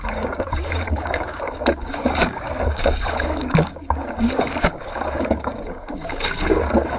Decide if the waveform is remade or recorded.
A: remade